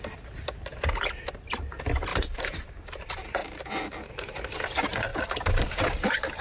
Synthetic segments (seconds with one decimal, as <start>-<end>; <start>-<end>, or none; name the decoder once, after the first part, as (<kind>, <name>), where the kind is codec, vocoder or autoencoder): 2.1-2.7 (vocoder, BigVGAN v2); 5.1-6.4